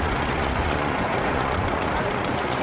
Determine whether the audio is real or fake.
fake